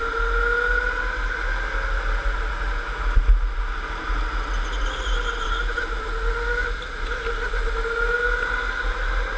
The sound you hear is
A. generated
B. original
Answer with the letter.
B